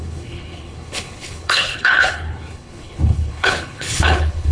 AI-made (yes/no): yes